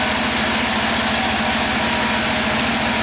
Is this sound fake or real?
real